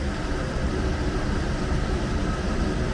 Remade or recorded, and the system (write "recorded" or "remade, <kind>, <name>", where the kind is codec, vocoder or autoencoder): remade, vocoder, BigVGAN v2